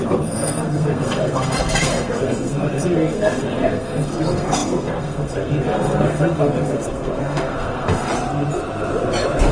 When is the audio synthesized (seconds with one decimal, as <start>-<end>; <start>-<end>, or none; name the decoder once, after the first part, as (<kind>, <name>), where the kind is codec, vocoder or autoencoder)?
0.0-8.1 (codec, SNAC)